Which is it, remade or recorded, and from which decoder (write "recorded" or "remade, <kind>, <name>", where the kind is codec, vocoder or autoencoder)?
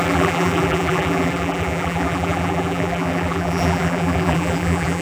remade, vocoder, BigVGAN v2